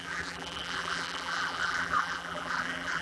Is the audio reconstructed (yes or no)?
yes